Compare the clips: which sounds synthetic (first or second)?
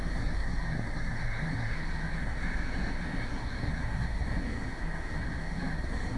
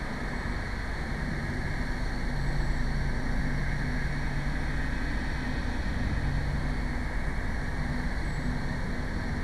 first